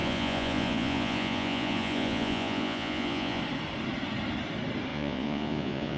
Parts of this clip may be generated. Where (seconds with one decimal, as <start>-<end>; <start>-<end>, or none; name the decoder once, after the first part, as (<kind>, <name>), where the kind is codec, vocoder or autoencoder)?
0.0-3.4 (vocoder, Vocos); 4.9-6.0